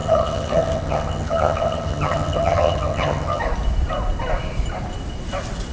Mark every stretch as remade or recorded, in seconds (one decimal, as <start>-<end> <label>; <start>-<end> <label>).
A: 0.0-3.4 remade; 3.4-5.7 recorded